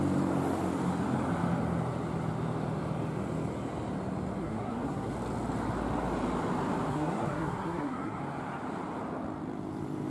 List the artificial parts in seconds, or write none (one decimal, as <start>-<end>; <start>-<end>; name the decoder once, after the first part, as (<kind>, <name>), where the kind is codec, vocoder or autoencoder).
4.4-5.1 (codec, SNAC); 6.9-8.2